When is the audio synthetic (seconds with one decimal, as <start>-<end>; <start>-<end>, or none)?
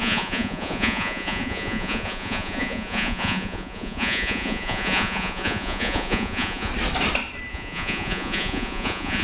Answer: 0.0-6.7; 7.5-9.2